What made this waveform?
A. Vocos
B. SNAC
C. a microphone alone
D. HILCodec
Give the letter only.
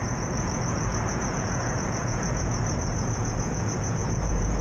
A